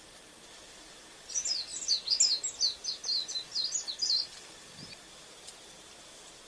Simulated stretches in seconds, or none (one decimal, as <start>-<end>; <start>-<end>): none